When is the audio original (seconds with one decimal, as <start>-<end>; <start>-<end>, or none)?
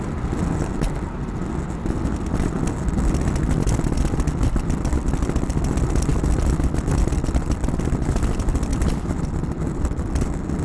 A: 0.0-8.7